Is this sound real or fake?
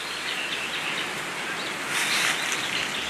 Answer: real